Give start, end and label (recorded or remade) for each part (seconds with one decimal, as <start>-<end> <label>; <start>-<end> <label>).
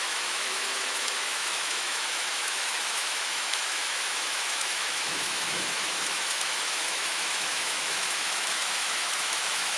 0.0-9.8 remade